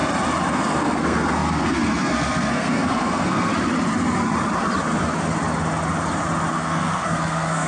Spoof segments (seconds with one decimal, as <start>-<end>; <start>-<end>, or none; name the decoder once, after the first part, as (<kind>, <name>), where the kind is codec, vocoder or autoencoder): 0.5-3.5 (codec, SNAC); 6.5-7.7